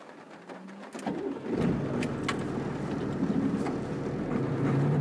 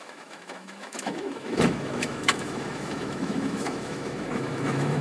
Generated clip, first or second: second